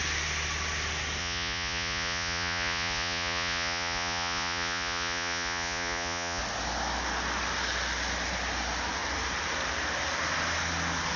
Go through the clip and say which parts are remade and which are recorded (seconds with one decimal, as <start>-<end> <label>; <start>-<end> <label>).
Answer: 0.0-1.2 recorded; 1.2-6.4 remade; 6.4-11.2 recorded